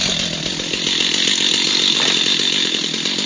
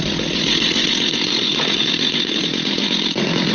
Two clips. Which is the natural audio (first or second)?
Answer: first